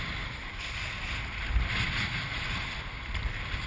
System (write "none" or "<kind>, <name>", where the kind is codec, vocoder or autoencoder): none